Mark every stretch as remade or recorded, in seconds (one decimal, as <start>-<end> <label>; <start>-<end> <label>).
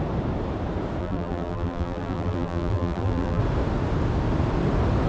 0.0-1.0 recorded; 1.0-3.4 remade; 3.4-5.1 recorded